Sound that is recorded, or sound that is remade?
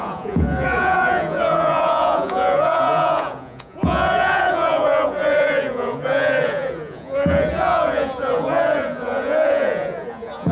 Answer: remade